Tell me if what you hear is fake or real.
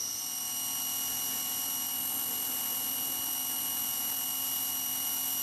real